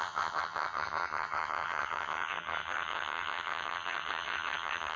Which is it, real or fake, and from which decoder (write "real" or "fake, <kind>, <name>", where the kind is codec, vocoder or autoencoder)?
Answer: fake, vocoder, HiFi-GAN